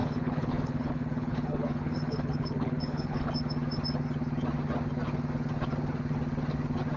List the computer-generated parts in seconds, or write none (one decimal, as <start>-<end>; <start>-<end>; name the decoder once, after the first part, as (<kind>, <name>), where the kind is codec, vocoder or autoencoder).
0.0-3.3 (codec, HILCodec)